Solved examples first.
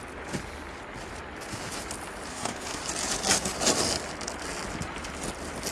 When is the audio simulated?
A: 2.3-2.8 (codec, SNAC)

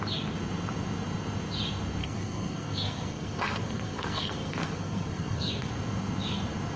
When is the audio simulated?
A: 2.0-5.7 (codec, SNAC)